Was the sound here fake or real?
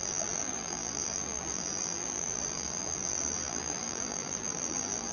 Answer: fake